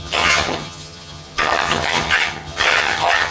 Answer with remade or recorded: remade